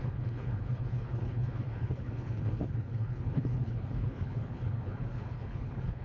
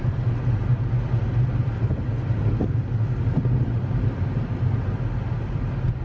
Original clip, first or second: second